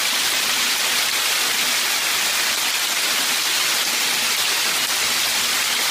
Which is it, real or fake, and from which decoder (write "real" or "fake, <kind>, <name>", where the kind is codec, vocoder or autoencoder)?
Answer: real